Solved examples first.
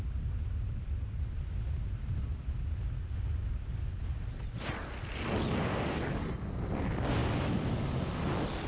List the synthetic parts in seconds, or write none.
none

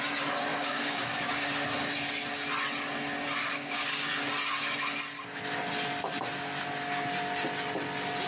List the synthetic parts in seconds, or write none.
0.5-1.3 (codec, DAC); 3.4-4.1

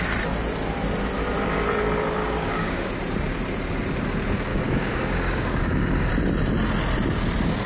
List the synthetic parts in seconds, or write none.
2.2-2.9 (codec, DAC); 4.5-6.1

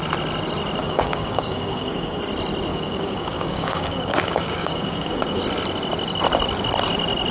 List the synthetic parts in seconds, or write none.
0.8-2.2 (codec, DAC); 2.7-5.4

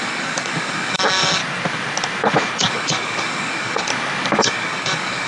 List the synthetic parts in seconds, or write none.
0.0-1.4 (codec, DAC); 2.7-3.9; 4.4-5.3

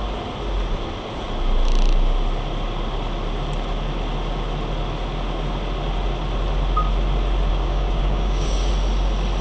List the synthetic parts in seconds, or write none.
7.5-8.7 (codec, DAC)

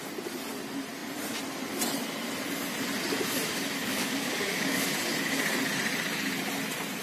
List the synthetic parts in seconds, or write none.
3.8-4.9 (codec, DAC)

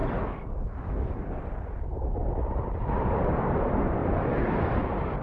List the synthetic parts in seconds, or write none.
0.0-1.4 (codec, DAC)